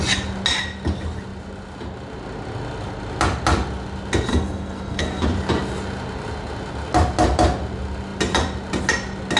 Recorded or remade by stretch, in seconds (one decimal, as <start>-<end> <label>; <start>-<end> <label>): 0.0-4.3 recorded; 4.3-5.2 remade; 5.2-9.4 recorded